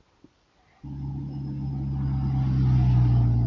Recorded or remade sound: recorded